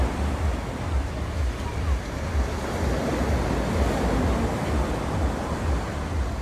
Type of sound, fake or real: real